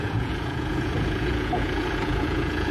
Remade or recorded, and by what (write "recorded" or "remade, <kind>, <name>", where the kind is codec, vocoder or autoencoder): remade, vocoder, Vocos